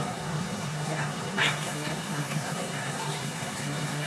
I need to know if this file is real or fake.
fake